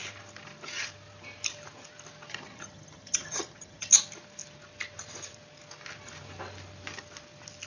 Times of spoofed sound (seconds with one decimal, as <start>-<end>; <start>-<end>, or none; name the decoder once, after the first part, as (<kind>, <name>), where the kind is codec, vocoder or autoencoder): 2.3-3.9 (vocoder, HiFi-GAN)